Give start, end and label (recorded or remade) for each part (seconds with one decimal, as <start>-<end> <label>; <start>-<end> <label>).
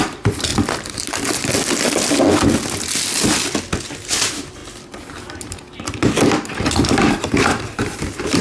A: 0.0-0.5 remade; 0.5-3.8 recorded; 3.8-4.6 remade; 4.6-7.1 recorded; 7.1-8.4 remade